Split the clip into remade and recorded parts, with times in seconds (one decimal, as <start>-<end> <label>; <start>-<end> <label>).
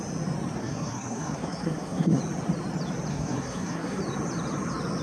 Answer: 0.0-0.6 recorded; 0.6-2.2 remade; 2.2-3.1 recorded; 3.1-4.0 remade; 4.0-5.0 recorded